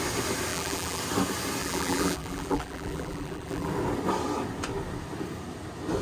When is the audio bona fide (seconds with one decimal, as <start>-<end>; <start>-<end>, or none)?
0.0-0.5; 1.0-1.6; 3.7-6.0